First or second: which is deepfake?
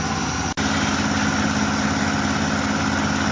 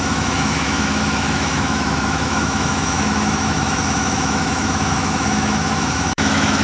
second